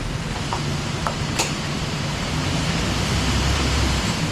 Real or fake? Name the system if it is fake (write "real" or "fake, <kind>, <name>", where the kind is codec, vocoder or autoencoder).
fake, vocoder, BigVGAN v2